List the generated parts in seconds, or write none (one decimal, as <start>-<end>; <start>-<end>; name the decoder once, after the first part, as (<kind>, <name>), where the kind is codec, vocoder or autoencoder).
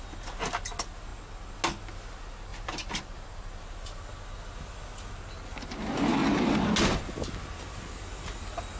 2.5-3.7 (vocoder, BigVGAN v2)